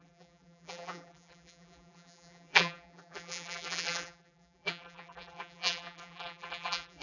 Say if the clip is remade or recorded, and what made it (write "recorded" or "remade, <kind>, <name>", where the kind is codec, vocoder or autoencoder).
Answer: remade, vocoder, BigVGAN v2